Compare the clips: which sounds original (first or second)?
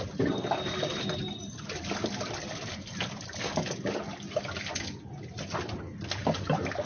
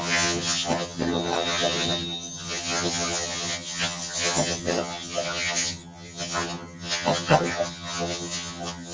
first